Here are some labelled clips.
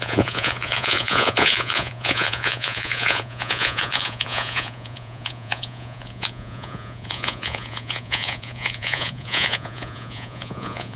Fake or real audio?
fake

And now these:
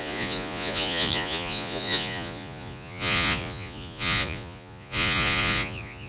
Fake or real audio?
fake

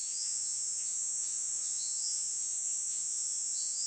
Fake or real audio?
fake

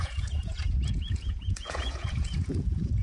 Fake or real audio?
fake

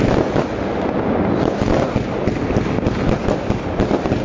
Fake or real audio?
real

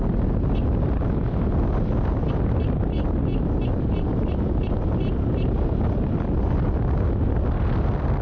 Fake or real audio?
real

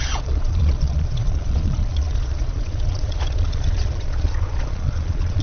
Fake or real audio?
fake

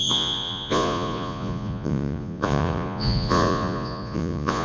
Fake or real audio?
fake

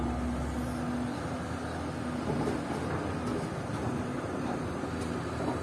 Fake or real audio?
real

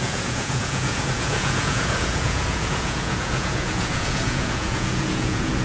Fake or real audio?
fake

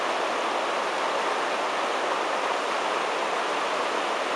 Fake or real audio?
real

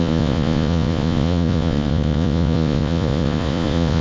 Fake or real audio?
fake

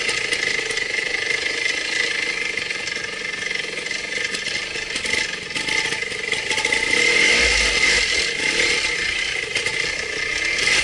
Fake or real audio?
real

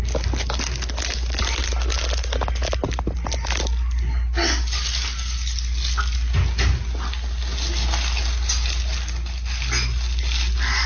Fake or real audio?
real